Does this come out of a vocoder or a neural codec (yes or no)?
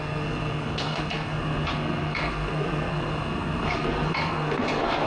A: yes